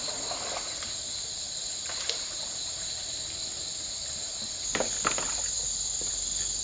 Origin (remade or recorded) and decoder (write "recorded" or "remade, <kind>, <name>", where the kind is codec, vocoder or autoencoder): recorded